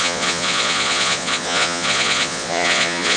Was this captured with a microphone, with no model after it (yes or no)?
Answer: no